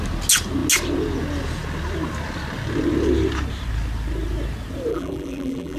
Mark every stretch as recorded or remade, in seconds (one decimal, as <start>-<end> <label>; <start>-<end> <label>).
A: 0.0-4.9 recorded; 4.9-5.8 remade